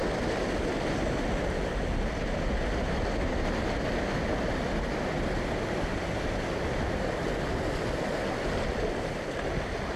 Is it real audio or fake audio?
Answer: real